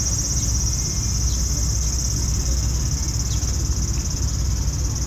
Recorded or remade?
recorded